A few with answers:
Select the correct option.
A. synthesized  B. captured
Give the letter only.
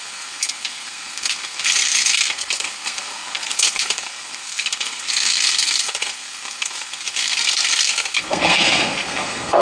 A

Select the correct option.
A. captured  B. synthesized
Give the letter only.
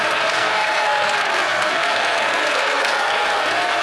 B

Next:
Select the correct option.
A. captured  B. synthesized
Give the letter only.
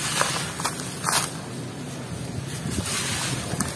A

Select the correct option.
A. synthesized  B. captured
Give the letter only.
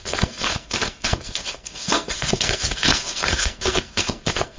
A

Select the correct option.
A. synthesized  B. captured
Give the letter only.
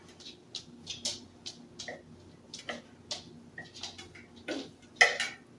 B